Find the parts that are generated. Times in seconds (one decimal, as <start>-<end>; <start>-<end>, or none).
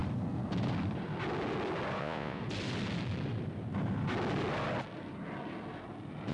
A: 2.0-2.4